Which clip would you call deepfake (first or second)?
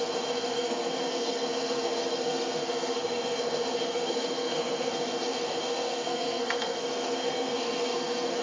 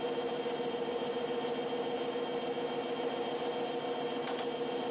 first